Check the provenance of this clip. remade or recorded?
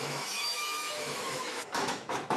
remade